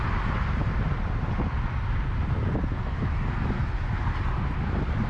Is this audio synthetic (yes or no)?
no